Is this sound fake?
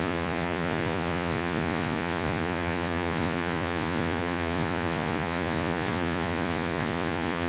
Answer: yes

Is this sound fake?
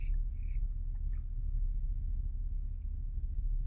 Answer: no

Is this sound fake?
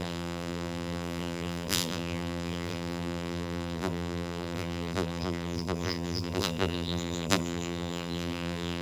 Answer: yes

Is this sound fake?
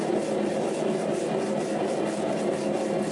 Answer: no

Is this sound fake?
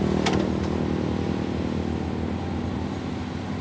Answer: no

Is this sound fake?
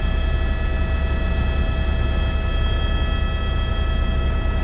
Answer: no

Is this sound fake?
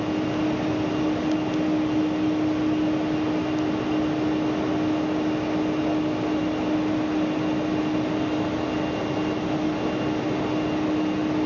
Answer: no